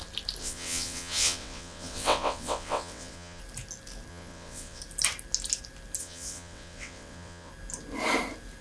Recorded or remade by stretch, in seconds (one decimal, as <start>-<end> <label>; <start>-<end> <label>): 0.0-0.4 recorded; 0.4-3.4 remade; 3.4-4.1 recorded; 4.1-4.8 remade; 4.8-6.0 recorded; 6.0-7.5 remade; 7.5-8.6 recorded